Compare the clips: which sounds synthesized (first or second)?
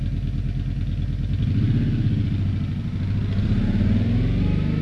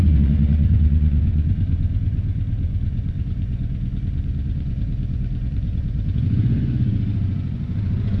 second